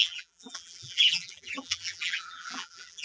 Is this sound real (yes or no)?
no